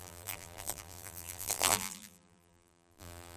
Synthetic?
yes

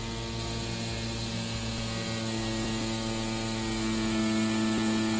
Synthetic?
no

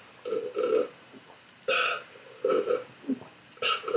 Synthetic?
no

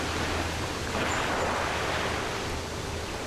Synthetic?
no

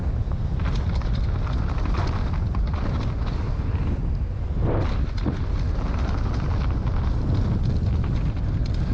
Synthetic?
no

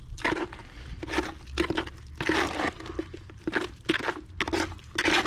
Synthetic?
no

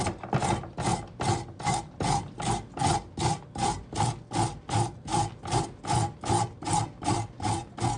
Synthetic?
no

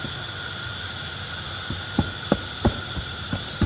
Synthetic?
no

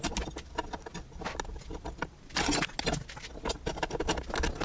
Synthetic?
no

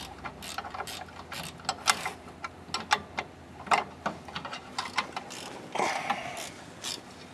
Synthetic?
no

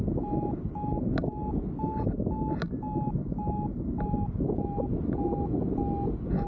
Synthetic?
no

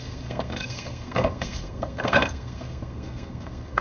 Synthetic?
yes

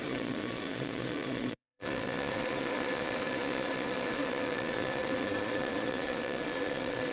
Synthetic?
yes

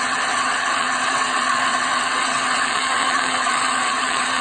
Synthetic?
yes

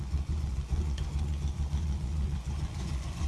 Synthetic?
yes